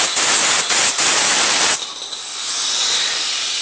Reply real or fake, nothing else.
real